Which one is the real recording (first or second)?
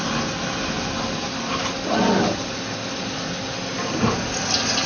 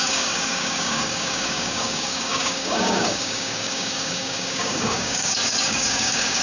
first